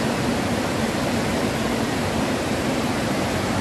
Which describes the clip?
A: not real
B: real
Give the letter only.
B